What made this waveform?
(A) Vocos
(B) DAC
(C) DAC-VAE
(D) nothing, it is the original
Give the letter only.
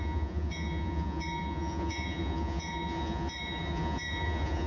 A